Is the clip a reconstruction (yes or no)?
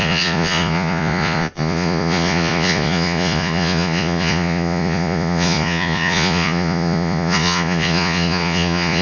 yes